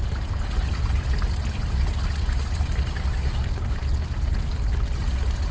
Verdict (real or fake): real